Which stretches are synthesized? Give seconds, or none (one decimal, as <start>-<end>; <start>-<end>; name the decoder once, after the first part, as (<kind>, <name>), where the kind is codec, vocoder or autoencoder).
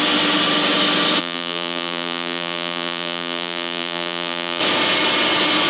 1.2-4.6 (vocoder, BigVGAN v2)